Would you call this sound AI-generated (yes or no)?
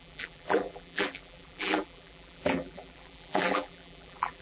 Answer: yes